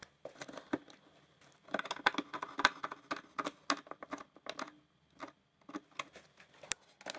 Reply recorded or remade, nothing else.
recorded